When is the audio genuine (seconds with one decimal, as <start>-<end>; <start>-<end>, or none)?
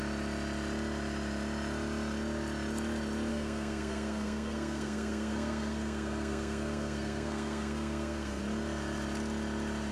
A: 0.0-3.3; 8.4-9.9